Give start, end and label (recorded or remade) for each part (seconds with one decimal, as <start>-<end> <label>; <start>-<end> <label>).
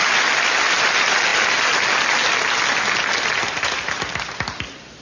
0.0-5.0 recorded